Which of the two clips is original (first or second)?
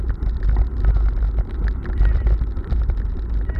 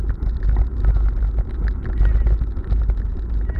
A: second